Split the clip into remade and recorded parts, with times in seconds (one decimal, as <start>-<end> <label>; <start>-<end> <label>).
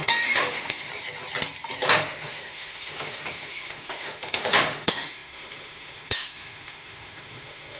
0.0-0.9 remade; 0.9-1.9 recorded; 1.9-7.8 remade